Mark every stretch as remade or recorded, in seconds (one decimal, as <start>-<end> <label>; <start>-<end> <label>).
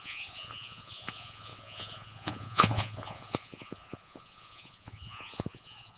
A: 0.0-6.0 remade